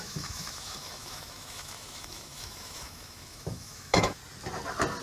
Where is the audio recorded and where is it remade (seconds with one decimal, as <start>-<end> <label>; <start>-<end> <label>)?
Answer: 0.0-4.2 remade; 4.2-5.0 recorded